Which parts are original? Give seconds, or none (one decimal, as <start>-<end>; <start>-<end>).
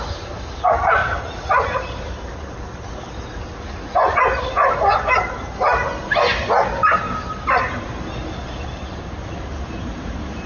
0.0-1.0; 1.9-10.5